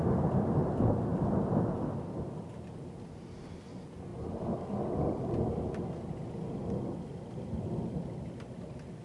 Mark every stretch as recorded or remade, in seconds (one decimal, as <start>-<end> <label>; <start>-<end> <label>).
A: 0.0-9.0 recorded